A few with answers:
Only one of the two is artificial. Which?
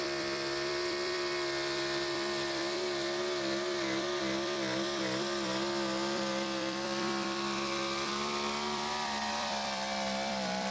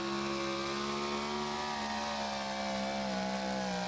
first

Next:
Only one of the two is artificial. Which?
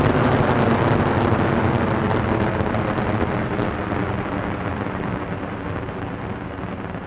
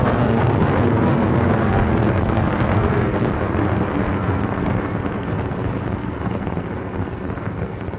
second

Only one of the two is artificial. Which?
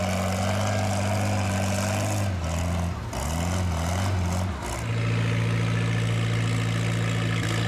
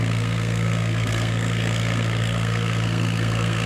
second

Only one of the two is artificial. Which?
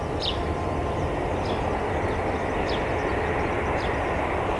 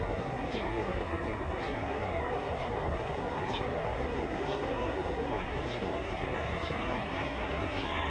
second